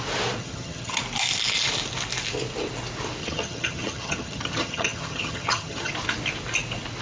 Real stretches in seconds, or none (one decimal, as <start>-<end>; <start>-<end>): 0.0-0.4; 1.0-3.2; 5.9-7.0